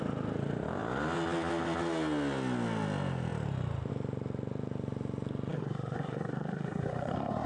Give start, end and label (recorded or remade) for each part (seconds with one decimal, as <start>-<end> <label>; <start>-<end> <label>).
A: 0.0-5.5 recorded; 5.5-7.5 remade